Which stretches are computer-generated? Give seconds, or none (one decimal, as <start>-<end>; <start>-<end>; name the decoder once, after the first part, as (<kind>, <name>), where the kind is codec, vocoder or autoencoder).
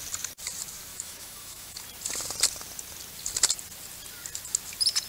0.9-1.8 (autoencoder, DAC-VAE)